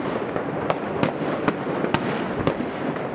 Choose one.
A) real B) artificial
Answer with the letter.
B